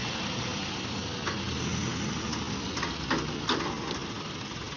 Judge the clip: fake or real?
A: real